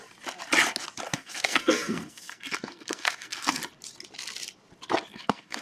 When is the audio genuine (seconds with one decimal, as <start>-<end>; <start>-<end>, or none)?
0.0-1.1; 3.6-5.1